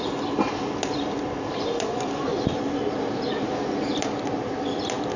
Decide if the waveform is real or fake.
real